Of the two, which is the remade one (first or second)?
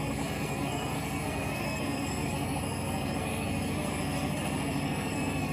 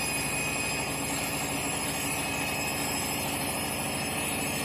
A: first